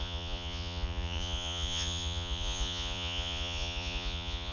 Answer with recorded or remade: remade